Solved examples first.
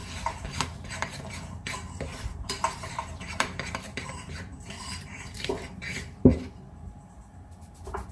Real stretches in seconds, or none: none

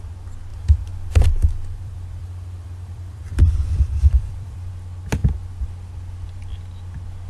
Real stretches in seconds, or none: 0.0-0.5; 4.7-7.3